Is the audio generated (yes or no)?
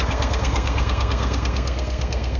yes